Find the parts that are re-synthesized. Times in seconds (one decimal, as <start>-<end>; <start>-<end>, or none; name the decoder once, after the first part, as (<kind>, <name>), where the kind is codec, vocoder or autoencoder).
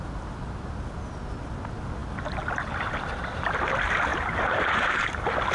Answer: 4.1-5.1 (vocoder, BigVGAN v2)